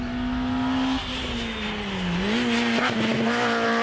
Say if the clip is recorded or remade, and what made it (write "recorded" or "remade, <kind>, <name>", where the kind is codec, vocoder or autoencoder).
recorded